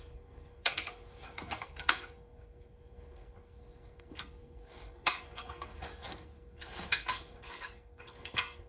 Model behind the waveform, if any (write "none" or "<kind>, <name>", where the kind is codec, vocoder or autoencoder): codec, SNAC